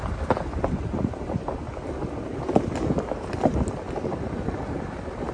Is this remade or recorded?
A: recorded